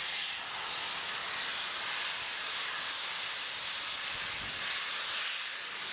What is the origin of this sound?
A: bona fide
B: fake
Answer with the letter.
A